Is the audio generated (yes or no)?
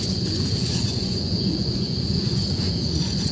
yes